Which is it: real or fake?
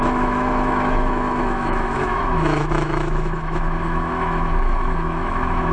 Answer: fake